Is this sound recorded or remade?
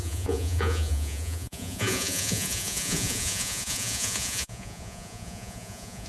remade